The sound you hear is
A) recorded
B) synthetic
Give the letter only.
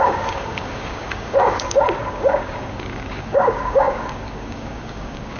B